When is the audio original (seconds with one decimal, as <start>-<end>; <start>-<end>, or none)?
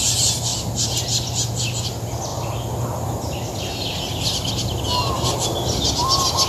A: 0.0-6.5